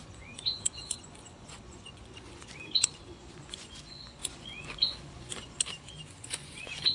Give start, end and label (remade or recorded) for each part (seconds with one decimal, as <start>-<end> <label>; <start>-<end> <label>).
0.0-6.9 remade